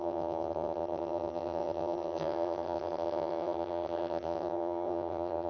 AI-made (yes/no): yes